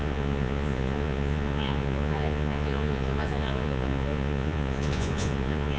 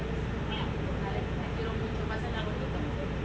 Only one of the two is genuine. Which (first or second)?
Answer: second